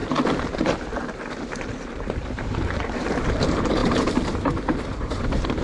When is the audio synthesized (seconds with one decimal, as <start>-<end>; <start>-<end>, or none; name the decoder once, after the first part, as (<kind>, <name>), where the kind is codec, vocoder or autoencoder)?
0.0-5.6 (vocoder, BigVGAN v2)